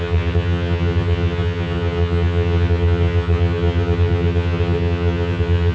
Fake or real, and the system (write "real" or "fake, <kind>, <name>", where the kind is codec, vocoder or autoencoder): fake, vocoder, HiFi-GAN